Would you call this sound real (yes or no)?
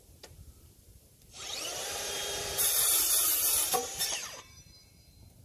no